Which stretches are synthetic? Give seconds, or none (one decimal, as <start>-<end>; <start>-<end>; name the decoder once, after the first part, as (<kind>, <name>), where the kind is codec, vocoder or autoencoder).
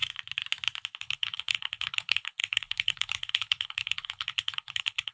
1.0-5.1 (codec, HILCodec)